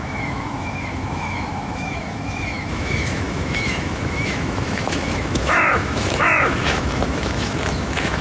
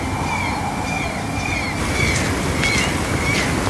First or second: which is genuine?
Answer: second